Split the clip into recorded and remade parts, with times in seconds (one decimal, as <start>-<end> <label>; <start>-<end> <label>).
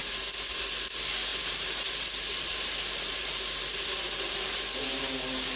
0.0-1.3 recorded; 1.3-4.7 remade; 4.7-5.6 recorded